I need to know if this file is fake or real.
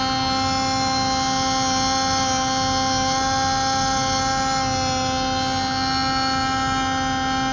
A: real